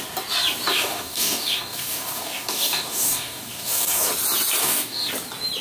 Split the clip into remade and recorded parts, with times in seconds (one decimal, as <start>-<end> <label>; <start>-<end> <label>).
0.0-0.7 recorded; 0.7-4.1 remade; 4.1-4.6 recorded; 4.6-5.1 remade; 5.1-5.6 recorded